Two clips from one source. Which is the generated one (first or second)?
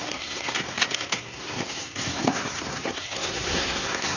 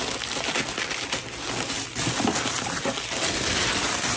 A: first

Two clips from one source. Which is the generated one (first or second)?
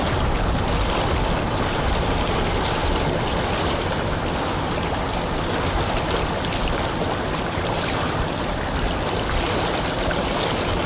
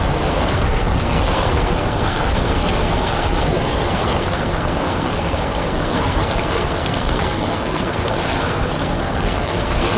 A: second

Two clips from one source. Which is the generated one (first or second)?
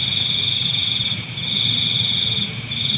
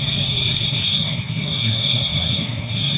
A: second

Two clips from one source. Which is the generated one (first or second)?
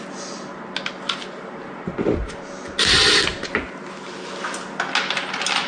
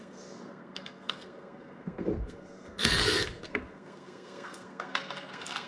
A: second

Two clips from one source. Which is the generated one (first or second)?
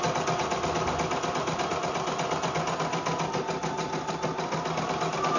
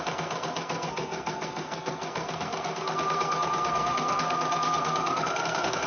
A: second